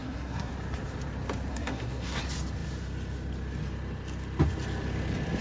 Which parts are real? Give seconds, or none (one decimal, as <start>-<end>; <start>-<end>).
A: 0.5-1.5; 2.2-5.4